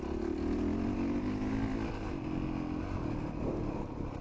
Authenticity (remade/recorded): recorded